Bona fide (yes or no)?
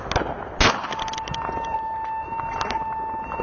yes